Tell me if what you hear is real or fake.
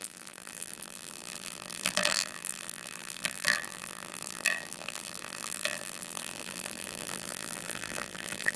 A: fake